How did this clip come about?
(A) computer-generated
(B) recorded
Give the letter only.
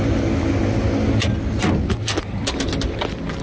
B